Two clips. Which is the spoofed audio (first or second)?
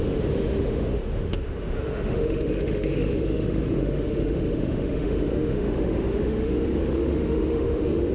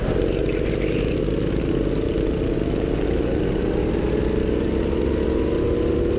first